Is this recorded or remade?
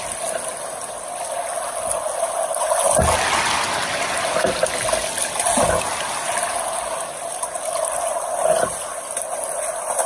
recorded